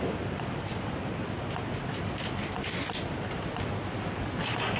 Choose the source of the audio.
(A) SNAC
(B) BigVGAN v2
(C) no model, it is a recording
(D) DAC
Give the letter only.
C